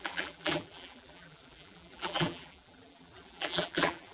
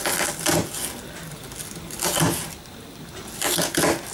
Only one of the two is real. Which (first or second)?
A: second